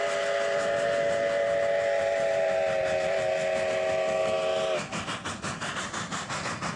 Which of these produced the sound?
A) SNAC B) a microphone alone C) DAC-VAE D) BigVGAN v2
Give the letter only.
B